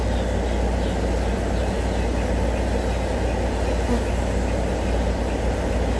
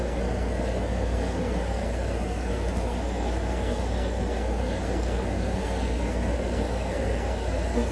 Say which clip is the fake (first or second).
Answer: second